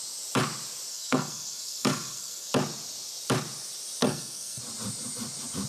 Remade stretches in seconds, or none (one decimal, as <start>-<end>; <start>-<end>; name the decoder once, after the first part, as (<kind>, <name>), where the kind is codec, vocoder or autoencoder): 0.9-2.5 (codec, SNAC); 4.0-4.6